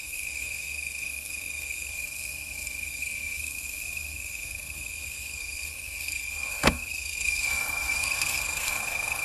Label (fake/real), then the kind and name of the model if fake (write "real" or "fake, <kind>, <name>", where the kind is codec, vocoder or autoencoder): fake, codec, SNAC